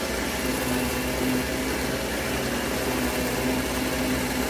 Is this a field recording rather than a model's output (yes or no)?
yes